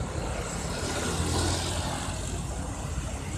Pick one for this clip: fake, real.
real